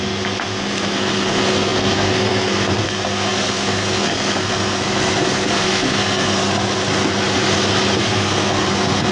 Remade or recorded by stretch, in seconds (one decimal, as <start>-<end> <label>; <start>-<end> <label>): 0.0-6.4 remade; 6.4-8.0 recorded; 8.0-9.1 remade